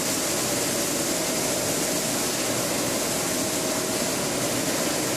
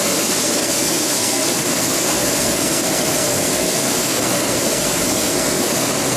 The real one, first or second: first